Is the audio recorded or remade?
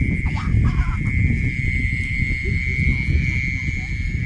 recorded